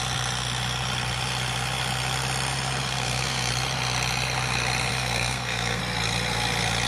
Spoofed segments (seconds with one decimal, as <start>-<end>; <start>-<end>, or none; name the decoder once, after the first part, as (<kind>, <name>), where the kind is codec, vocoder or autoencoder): 2.9-3.5 (codec, SNAC); 4.9-5.8